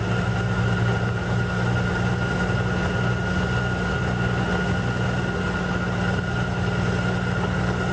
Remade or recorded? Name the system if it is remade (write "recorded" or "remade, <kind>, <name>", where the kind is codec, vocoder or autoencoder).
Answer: recorded